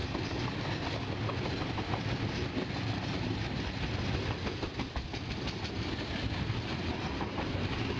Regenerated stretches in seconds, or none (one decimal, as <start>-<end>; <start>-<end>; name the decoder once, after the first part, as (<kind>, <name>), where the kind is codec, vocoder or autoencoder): none